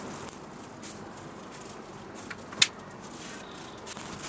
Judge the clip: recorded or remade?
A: recorded